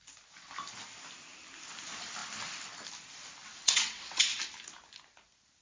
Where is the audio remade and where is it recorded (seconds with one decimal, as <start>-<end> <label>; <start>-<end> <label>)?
0.0-3.4 recorded; 3.4-4.4 remade; 4.4-5.6 recorded